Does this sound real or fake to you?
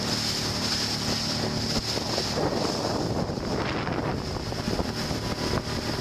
real